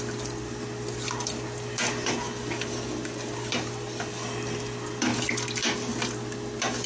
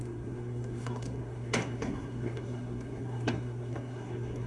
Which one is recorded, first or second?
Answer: first